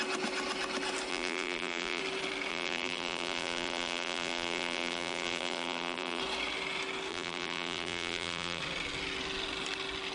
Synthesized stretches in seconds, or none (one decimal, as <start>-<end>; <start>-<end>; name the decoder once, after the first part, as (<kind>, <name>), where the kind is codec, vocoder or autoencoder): 1.1-2.0 (vocoder, BigVGAN v2); 2.5-6.2; 7.1-8.6